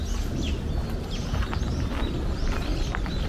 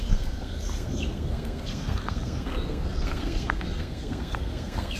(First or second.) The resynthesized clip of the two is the second